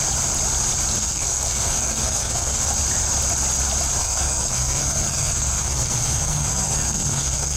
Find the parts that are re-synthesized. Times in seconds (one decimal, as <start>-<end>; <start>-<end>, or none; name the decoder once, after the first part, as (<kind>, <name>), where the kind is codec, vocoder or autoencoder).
1.0-2.7 (codec, SNAC); 4.0-7.6